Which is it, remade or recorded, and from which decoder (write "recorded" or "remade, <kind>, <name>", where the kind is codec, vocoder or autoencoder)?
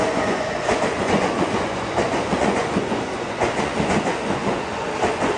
remade, vocoder, Vocos